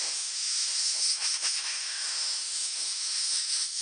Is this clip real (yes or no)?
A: no